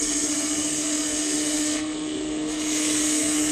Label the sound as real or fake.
fake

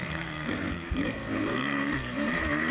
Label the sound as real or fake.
fake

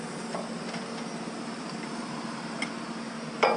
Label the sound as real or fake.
real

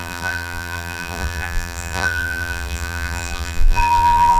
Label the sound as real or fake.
fake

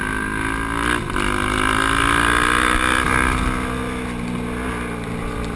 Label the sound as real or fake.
real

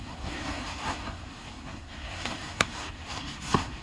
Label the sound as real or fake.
fake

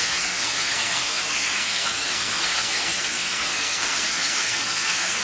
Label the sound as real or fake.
fake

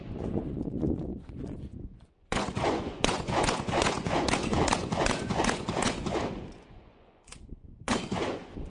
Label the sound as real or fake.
fake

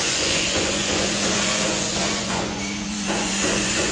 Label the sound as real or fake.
fake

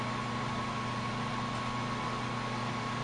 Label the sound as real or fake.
real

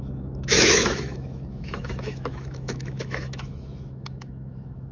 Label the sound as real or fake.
fake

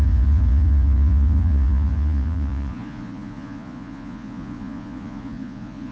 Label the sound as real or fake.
fake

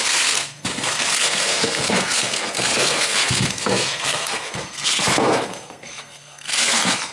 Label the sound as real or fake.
fake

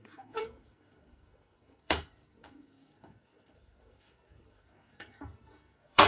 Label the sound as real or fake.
fake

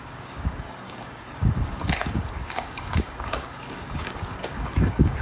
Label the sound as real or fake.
fake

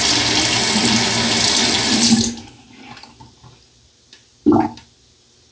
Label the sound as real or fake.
real